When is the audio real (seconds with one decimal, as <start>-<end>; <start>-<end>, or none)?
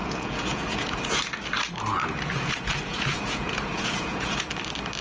1.2-2.0; 4.4-5.0